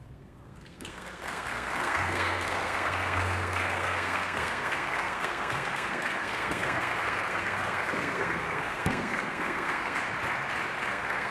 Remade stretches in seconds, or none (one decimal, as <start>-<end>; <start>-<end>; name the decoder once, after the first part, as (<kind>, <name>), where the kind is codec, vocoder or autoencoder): 0.0-10.0 (codec, SNAC); 10.8-11.3